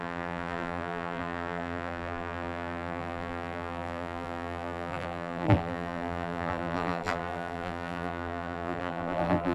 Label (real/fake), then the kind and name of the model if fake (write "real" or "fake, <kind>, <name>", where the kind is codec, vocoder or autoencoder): fake, vocoder, BigVGAN v2